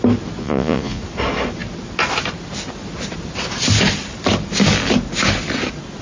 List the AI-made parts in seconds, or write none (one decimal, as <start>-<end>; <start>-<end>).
0.4-1.0